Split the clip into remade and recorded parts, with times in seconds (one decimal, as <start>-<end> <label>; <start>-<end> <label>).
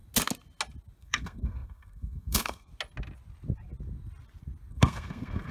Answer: 0.0-1.0 recorded; 1.0-2.7 remade; 2.7-4.7 recorded; 4.7-5.5 remade